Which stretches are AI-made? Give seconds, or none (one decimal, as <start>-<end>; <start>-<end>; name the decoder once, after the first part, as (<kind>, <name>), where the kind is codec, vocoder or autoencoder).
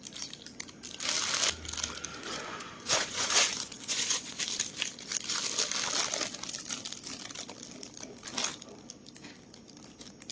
2.1-4.4 (vocoder, Vocos)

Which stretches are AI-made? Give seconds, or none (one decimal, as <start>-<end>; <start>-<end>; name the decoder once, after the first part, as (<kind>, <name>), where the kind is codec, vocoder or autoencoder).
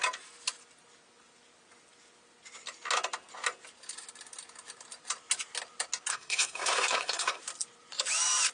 6.1-7.4 (codec, SNAC)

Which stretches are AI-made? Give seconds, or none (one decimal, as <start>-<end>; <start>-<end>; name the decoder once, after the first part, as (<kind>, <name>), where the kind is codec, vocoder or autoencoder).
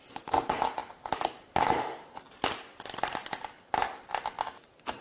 none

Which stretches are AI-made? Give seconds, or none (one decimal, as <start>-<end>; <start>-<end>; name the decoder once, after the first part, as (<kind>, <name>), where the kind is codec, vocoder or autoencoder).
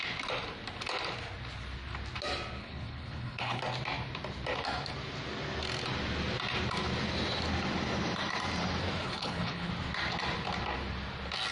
2.6-3.6 (codec, HILCodec); 9.0-9.7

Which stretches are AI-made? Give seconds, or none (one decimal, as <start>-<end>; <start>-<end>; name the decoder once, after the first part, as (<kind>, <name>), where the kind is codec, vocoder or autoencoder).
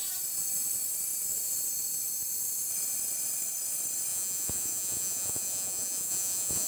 4.1-6.7 (vocoder, Vocos)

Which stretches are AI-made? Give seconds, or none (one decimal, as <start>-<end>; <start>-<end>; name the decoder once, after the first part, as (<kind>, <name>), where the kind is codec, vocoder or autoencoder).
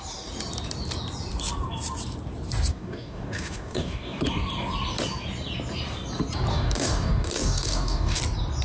2.7-4.2 (codec, DAC); 6.5-8.2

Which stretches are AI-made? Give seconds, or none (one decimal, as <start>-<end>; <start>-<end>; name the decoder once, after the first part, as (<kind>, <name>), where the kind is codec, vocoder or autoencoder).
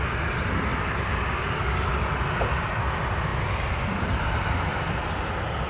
none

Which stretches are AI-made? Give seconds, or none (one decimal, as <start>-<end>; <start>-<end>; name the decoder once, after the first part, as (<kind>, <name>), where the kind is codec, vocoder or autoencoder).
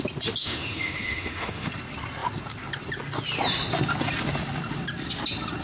0.4-1.7 (autoencoder, DAC-VAE)